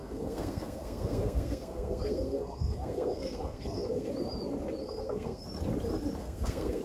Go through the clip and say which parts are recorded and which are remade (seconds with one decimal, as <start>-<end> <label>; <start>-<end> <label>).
0.0-4.1 remade; 4.1-4.8 recorded; 4.8-5.4 remade; 5.4-6.2 recorded; 6.2-6.8 remade